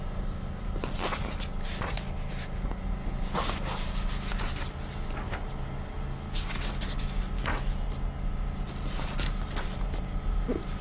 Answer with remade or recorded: recorded